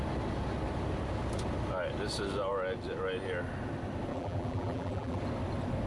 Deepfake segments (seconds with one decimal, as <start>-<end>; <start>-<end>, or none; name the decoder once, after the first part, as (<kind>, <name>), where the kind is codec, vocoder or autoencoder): 4.1-5.2 (vocoder, BigVGAN v2)